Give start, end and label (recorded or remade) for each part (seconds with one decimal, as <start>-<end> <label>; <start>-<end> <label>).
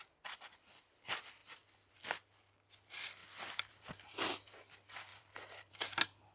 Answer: 0.0-1.4 recorded; 1.4-2.0 remade; 2.0-5.1 recorded; 5.1-5.7 remade; 5.7-6.3 recorded